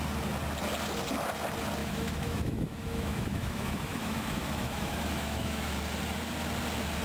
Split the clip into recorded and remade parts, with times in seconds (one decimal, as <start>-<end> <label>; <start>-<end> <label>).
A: 0.0-1.8 recorded; 1.8-5.7 remade; 5.7-7.0 recorded